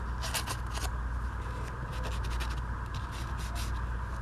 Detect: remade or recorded recorded